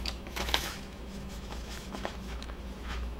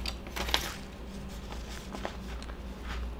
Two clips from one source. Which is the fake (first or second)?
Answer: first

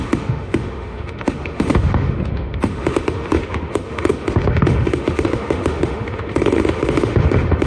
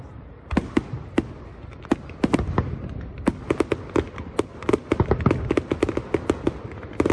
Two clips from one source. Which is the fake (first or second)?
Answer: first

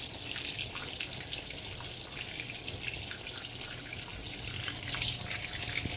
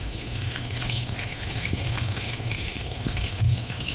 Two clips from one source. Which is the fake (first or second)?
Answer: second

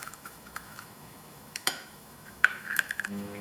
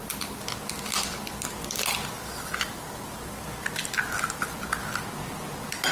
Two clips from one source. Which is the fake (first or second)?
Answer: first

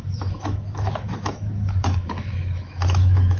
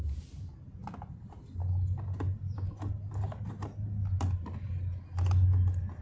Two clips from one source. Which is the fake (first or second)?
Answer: first